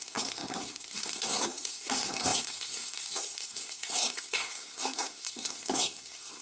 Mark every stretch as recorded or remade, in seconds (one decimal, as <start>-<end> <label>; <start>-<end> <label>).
0.0-6.4 remade